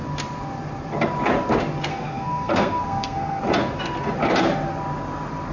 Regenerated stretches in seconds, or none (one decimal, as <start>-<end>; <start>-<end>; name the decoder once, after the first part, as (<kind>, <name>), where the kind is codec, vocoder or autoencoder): 1.9-3.4 (codec, SNAC)